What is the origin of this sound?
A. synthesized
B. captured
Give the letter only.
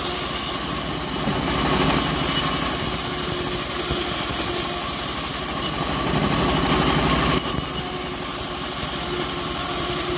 B